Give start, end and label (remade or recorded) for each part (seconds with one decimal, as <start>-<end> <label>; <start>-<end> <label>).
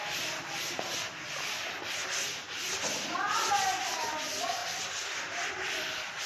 0.0-4.6 recorded; 4.6-5.8 remade; 5.8-6.3 recorded